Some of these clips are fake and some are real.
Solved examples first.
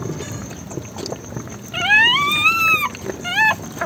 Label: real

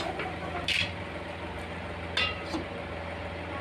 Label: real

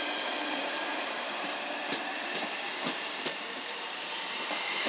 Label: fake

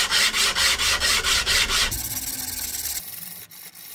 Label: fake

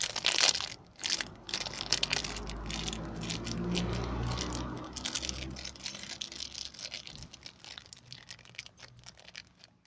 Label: real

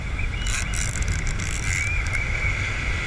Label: fake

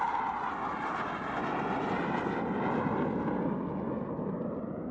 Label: fake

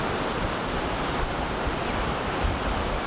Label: real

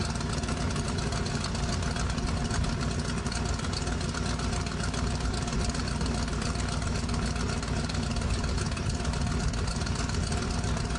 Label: real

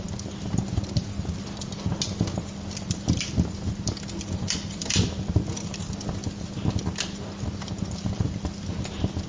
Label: real